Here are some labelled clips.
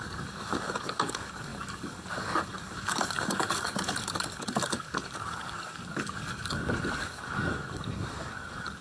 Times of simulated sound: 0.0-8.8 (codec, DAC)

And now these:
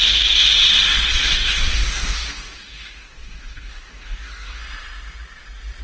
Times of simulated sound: 1.1-4.6 (codec, DAC)